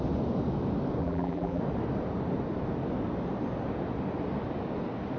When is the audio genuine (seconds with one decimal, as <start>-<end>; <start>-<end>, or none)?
0.0-1.0; 1.6-5.2